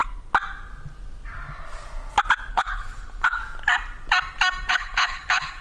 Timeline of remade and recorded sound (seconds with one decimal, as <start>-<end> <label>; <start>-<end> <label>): 0.0-2.5 recorded; 2.5-3.4 remade; 3.4-4.7 recorded; 4.7-5.6 remade